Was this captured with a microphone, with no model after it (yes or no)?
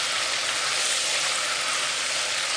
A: yes